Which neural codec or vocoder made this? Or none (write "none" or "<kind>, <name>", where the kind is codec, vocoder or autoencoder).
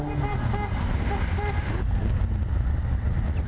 none